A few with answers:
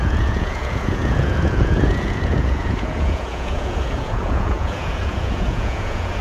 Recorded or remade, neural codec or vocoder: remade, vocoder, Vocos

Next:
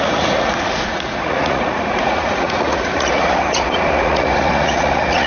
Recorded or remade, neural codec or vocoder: remade, vocoder, Vocos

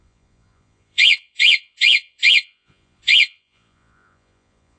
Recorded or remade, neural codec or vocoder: remade, vocoder, Vocos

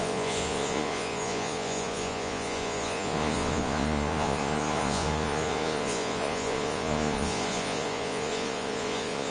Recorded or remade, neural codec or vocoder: remade, vocoder, Vocos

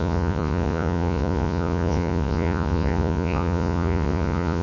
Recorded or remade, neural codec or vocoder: remade, vocoder, Vocos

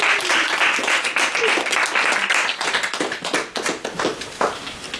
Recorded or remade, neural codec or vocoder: recorded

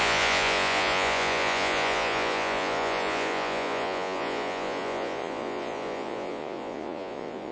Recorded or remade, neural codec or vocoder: remade, vocoder, Vocos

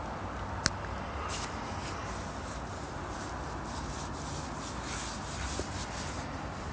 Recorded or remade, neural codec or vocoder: recorded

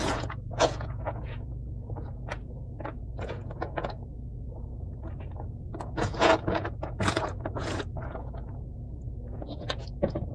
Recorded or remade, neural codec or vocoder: remade, vocoder, Vocos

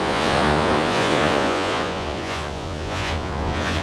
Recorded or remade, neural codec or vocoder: remade, vocoder, Vocos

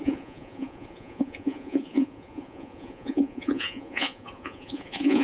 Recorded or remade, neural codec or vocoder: remade, vocoder, Vocos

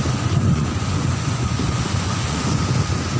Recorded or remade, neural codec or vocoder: remade, vocoder, Vocos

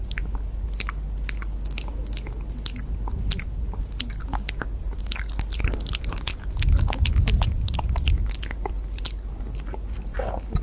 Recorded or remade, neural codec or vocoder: recorded